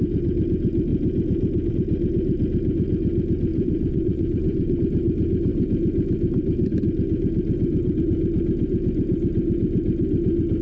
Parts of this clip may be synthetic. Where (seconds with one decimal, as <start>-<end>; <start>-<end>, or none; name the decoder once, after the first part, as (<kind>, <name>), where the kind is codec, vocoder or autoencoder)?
3.5-4.8 (vocoder, Vocos)